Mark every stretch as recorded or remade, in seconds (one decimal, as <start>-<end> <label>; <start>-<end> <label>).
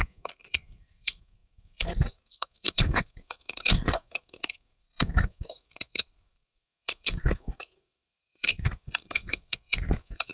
0.0-10.3 remade